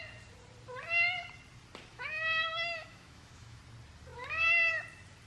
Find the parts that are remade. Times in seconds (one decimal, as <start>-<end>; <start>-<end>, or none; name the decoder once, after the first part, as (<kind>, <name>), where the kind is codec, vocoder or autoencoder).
1.9-3.6 (autoencoder, DAC-VAE)

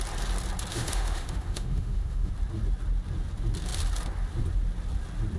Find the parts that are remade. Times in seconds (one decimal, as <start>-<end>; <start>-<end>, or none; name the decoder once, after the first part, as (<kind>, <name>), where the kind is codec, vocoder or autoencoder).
0.7-2.3 (autoencoder, DAC-VAE)

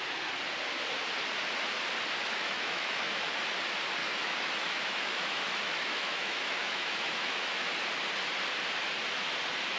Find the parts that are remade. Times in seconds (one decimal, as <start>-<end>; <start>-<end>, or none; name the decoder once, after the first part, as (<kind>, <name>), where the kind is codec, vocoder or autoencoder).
2.2-3.3 (autoencoder, DAC-VAE); 4.0-7.7